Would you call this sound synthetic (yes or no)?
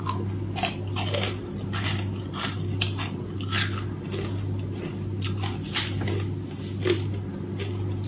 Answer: no